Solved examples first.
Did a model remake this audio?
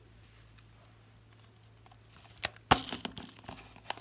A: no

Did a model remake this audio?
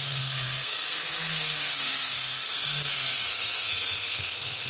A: yes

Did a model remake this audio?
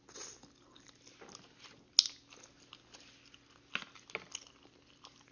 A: no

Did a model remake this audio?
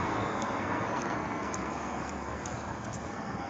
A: yes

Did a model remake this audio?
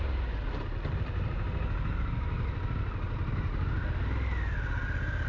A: no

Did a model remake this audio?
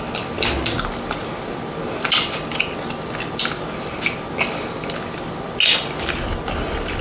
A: no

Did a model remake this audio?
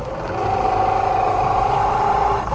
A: no